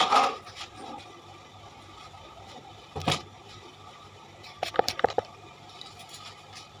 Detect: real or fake fake